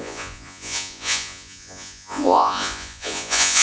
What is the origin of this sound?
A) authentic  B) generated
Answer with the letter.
B